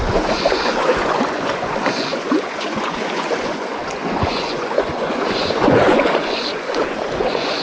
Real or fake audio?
fake